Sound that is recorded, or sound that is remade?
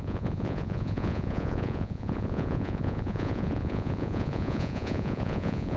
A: remade